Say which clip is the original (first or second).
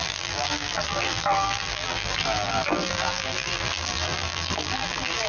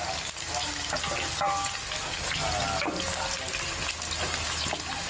second